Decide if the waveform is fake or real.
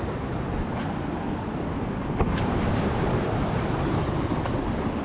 fake